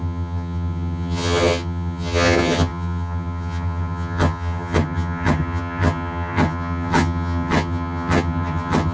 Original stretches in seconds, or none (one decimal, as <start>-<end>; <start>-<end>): none